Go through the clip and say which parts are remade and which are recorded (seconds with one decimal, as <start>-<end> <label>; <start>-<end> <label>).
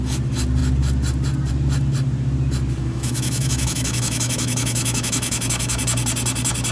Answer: 0.0-2.8 recorded; 2.8-5.8 remade; 5.8-6.7 recorded